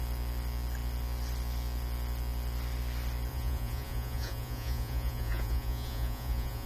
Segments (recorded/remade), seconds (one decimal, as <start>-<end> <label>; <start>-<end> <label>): 0.0-3.3 recorded; 3.3-6.7 remade